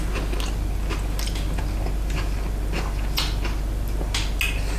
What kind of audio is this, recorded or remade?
recorded